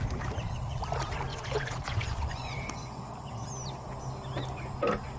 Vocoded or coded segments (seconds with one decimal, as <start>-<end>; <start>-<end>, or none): 1.3-3.3